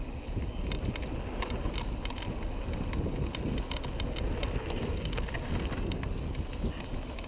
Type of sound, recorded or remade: recorded